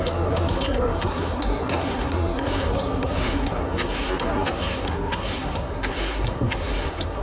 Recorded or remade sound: remade